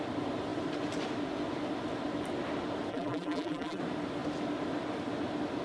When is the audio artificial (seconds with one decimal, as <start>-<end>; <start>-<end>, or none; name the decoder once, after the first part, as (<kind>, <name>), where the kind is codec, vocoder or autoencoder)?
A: 2.9-3.8 (vocoder, BigVGAN v2)